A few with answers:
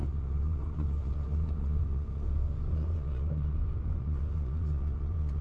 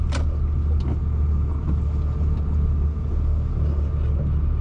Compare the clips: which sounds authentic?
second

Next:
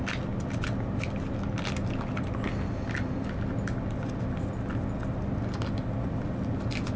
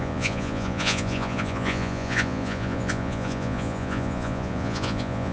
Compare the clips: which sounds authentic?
first